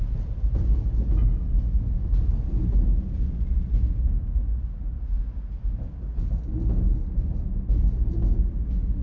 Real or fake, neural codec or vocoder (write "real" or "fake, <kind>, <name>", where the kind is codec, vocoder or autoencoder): real